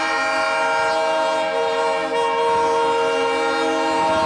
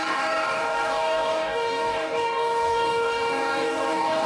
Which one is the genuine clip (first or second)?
first